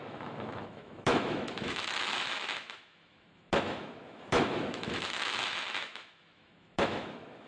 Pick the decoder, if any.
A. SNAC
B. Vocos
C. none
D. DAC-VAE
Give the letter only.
D